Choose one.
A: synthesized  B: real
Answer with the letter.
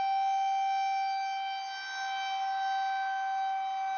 B